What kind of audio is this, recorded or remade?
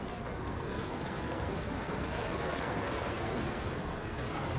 remade